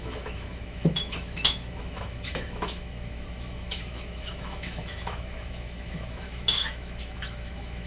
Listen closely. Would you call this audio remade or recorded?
remade